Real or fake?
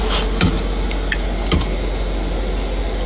real